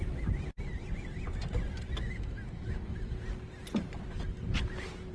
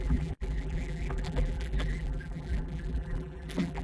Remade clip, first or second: second